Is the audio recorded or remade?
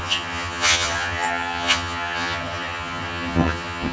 remade